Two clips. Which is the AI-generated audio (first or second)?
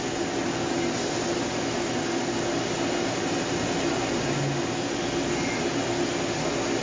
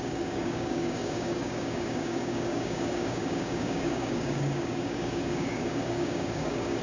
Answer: second